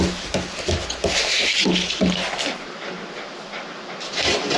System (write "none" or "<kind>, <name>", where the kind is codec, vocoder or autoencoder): none